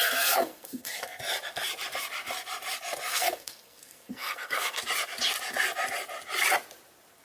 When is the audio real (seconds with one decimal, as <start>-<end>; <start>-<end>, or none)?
1.2-3.1; 4.8-7.2